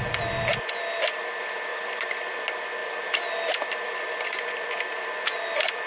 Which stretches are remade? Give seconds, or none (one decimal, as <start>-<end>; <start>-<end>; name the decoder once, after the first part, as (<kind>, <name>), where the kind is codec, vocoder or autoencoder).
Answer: none